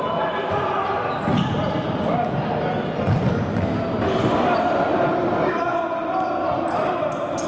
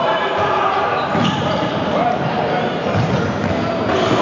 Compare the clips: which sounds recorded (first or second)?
first